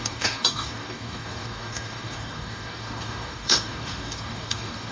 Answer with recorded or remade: remade